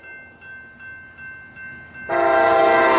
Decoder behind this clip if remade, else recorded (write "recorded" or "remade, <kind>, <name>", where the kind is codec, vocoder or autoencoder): recorded